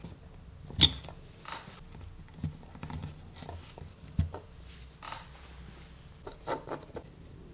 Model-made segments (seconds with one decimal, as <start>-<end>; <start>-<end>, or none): none